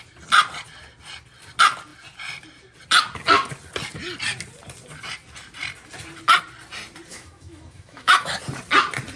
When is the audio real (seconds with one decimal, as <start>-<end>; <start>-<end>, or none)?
0.0-7.1; 8.4-9.2